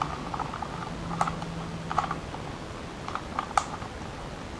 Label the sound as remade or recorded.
recorded